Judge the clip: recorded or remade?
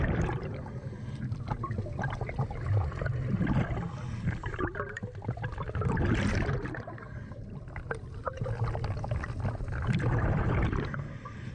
remade